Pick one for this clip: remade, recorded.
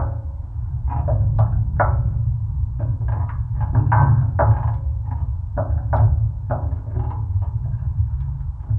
recorded